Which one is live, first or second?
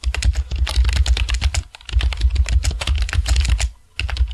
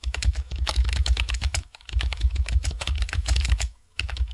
first